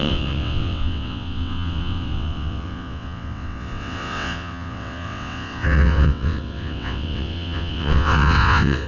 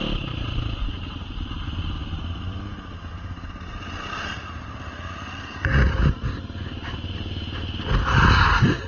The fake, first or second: first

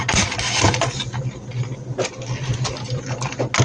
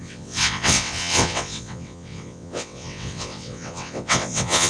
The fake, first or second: second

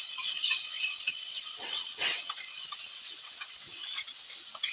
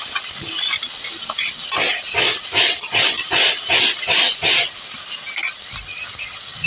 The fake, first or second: first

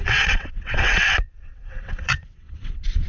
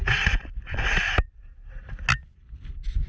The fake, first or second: first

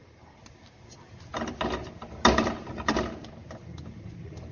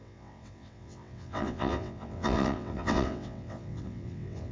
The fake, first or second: second